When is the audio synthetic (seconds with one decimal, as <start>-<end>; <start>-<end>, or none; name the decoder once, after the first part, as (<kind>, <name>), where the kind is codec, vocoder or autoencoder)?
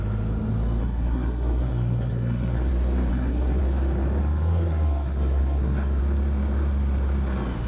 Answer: 0.8-2.7 (codec, SNAC); 3.1-3.6; 4.2-6.0